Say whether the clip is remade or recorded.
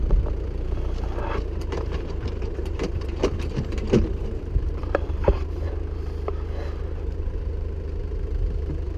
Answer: remade